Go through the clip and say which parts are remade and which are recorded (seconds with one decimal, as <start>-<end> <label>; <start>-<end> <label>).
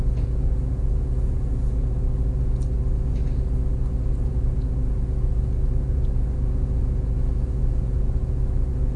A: 0.0-2.1 remade; 2.1-4.3 recorded; 4.3-9.0 remade